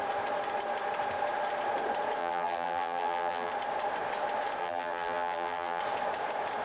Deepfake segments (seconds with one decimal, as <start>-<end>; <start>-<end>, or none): 2.2-3.5; 4.6-5.8